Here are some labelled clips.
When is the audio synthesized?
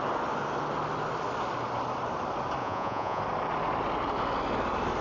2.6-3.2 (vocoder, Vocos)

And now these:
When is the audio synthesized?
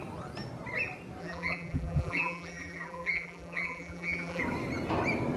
1.2-4.4 (vocoder, BigVGAN v2)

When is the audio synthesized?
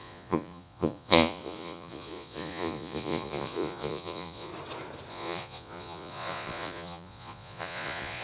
0.0-4.5 (vocoder, Vocos); 5.1-8.2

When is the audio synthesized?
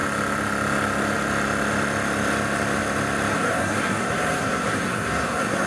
3.3-5.7 (codec, SNAC)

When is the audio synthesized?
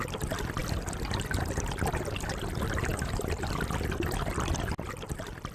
none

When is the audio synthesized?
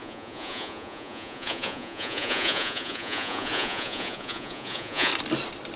0.0-5.1 (vocoder, Vocos)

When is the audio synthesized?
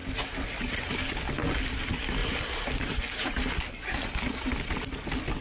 none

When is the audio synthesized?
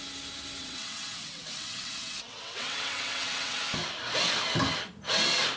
0.6-3.6 (vocoder, WaveNeXt)